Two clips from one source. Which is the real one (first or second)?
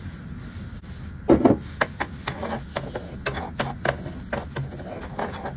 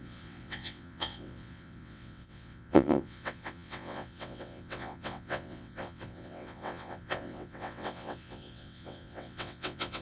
first